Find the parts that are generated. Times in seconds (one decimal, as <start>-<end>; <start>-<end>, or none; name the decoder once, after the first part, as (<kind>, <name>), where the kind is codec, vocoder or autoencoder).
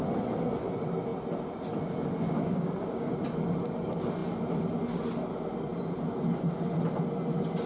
2.4-3.1 (codec, DAC)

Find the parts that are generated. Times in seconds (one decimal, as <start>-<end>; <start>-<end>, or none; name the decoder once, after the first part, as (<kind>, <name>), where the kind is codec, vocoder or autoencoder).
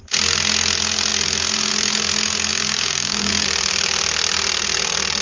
2.5-3.3 (codec, DAC)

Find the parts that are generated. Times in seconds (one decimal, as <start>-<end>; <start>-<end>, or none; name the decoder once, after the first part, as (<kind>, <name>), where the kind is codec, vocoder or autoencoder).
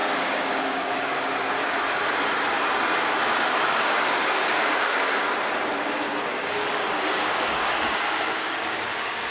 0.0-1.2 (codec, DAC); 3.5-5.2; 6.3-9.3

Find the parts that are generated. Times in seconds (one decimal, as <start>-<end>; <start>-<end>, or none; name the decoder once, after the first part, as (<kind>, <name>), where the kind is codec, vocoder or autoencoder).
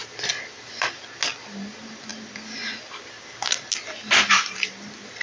none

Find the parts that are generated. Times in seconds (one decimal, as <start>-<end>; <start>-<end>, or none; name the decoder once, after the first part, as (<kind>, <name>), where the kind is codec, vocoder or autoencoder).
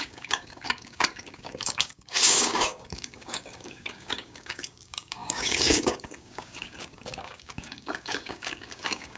0.0-9.2 (codec, DAC)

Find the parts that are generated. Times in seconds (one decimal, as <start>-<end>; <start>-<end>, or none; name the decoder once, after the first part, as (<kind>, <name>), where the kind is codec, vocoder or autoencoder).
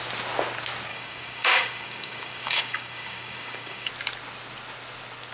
0.9-3.9 (codec, DAC)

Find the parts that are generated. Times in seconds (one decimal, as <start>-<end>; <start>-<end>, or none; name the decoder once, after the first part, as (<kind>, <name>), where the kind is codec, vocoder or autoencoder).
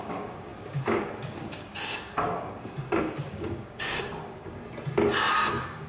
0.0-4.6 (codec, DAC); 5.3-5.9